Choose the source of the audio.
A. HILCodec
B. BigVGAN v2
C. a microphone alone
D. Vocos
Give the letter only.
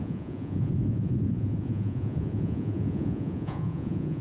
D